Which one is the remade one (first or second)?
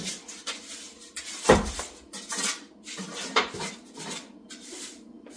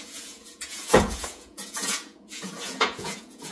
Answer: second